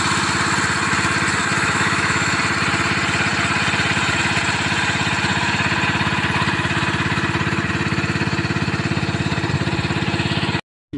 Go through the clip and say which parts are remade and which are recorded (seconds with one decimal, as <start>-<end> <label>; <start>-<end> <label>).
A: 0.0-1.4 recorded; 1.4-2.4 remade; 2.4-11.0 recorded